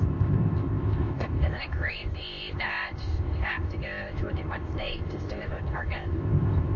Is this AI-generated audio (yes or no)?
yes